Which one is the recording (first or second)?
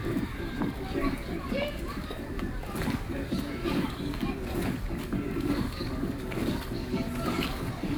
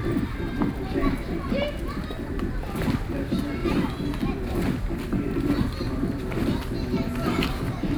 second